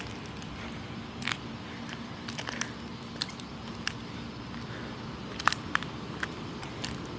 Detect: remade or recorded remade